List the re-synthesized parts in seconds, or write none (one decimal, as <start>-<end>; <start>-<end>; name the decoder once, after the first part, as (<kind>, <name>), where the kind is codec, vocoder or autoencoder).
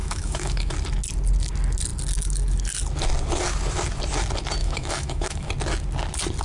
0.0-0.7 (autoencoder, DAC-VAE); 4.6-5.5